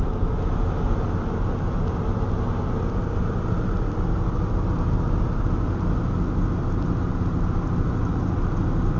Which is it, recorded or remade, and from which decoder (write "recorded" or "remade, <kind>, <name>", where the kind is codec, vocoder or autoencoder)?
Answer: recorded